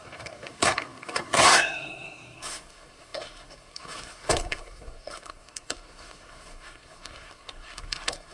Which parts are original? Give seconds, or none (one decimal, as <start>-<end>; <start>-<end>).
none